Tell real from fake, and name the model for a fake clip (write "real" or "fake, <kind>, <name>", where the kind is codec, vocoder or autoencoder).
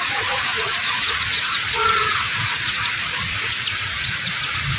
fake, vocoder, Vocos